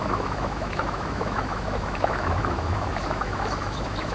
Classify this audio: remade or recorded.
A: remade